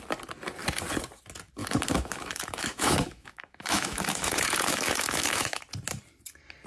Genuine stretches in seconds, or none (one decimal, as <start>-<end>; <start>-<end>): 0.0-1.6; 5.6-6.7